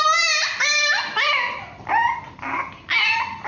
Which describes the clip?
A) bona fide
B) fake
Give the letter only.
A